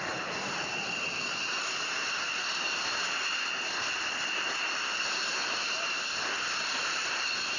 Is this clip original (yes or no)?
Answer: no